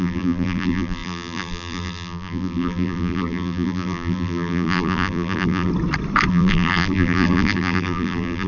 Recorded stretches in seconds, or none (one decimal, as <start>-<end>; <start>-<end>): 5.7-6.3